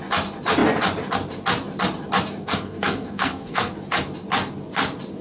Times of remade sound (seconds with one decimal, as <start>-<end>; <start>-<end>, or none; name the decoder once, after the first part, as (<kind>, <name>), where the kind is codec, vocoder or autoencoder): 2.4-3.7 (codec, SNAC)